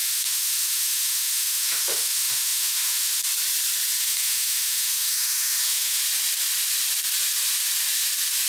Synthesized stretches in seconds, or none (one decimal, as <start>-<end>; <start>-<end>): 0.0-3.2; 4.0-6.0